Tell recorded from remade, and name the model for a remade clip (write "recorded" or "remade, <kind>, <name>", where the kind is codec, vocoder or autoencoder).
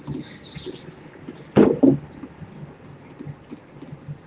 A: recorded